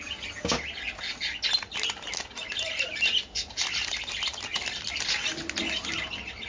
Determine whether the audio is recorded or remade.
recorded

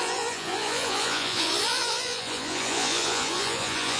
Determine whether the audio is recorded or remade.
remade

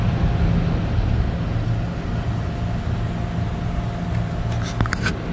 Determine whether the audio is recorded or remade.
recorded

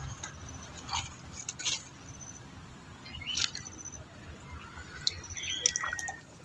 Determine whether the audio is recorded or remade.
recorded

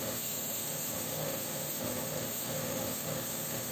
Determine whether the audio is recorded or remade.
remade